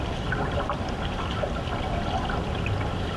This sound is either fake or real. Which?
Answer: real